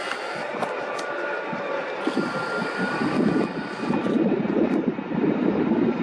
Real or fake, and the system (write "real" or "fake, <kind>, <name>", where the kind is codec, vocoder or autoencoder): real